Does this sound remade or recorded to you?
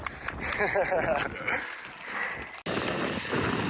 recorded